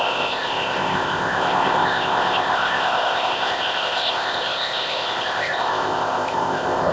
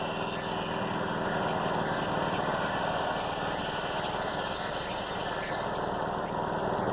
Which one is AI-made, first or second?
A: first